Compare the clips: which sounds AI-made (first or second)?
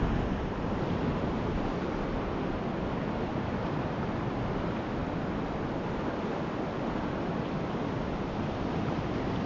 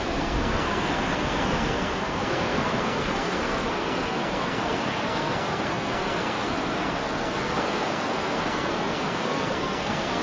second